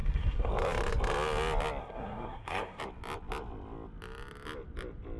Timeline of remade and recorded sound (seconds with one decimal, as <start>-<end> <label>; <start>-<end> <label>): 0.0-0.5 remade; 0.5-1.8 recorded; 1.8-2.8 remade; 2.8-5.2 recorded